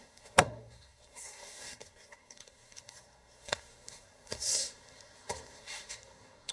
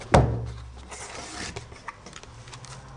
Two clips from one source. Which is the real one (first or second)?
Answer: second